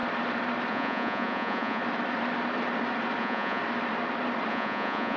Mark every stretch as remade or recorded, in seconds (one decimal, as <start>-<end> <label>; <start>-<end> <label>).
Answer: 0.0-0.7 recorded; 0.7-1.8 remade; 1.8-3.2 recorded; 3.2-3.6 remade; 3.6-4.5 recorded; 4.5-5.2 remade